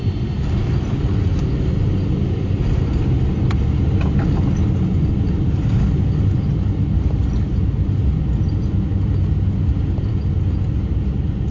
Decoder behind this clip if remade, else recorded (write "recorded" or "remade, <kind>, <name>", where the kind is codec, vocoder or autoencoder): recorded